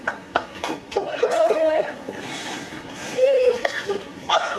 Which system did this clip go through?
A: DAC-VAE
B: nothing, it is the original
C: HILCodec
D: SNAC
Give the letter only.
D